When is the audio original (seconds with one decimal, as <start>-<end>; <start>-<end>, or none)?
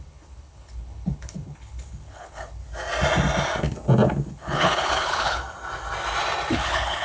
2.6-4.3; 5.4-6.5